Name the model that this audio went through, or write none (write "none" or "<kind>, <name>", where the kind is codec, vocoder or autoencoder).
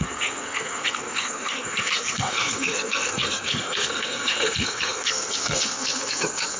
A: codec, SNAC